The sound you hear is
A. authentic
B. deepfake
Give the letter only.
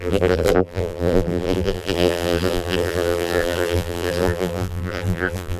B